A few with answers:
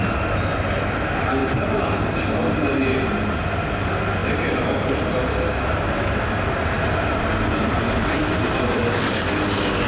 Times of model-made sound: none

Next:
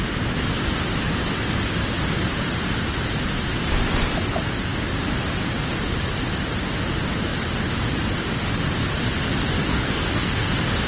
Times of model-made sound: 9.7-10.5 (codec, SNAC)

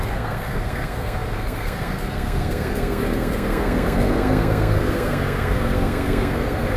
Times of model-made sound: 0.0-6.8 (codec, SNAC)

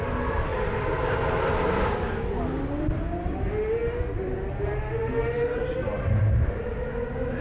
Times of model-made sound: none

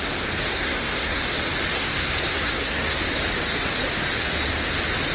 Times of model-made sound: 0.5-1.2 (codec, SNAC); 1.7-3.0